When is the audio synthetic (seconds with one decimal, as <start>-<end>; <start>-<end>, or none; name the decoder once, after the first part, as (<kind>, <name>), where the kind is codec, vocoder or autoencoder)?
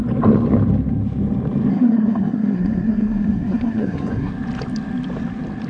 1.7-4.3 (codec, SNAC)